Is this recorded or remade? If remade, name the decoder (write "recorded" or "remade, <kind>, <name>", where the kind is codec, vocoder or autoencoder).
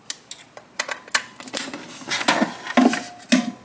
recorded